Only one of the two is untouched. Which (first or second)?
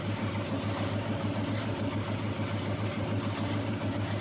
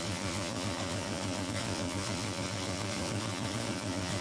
first